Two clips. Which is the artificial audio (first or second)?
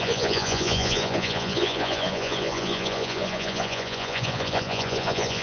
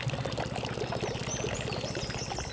first